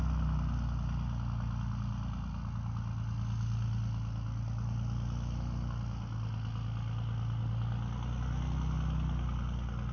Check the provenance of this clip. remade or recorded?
recorded